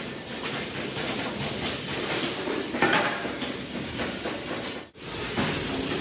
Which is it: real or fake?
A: real